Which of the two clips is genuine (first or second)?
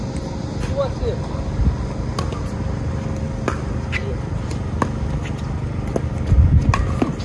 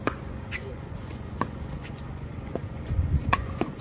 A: first